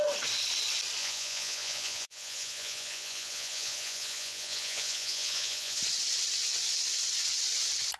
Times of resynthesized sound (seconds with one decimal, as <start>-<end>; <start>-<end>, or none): 1.0-5.8